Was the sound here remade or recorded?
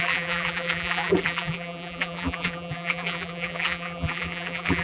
remade